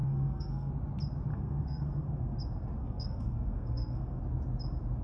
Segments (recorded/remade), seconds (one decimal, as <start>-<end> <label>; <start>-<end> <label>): 0.0-0.7 remade; 0.7-1.3 recorded; 1.3-2.4 remade; 2.4-2.8 recorded; 2.8-4.2 remade; 4.2-5.0 recorded